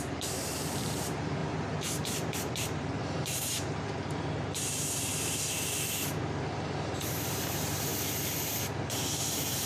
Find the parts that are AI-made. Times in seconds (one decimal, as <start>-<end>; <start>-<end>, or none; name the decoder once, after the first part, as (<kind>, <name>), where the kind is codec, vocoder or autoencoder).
0.0-1.4 (vocoder, BigVGAN v2); 2.4-5.1; 6.5-7.9; 8.8-9.7